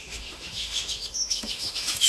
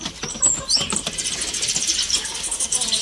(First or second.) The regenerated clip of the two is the first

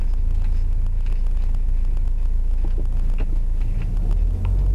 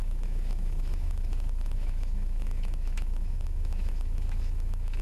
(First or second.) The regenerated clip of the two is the second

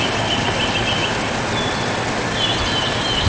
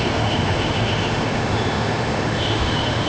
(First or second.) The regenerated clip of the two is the second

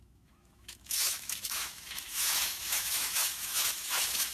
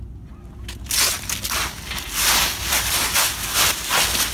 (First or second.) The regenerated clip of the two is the first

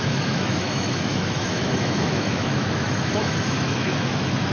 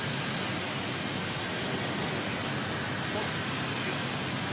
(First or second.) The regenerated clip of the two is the first